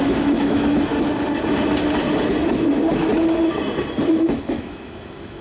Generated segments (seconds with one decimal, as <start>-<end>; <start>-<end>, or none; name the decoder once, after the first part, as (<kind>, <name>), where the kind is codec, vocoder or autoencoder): 0.0-0.9 (autoencoder, DAC-VAE); 4.1-5.4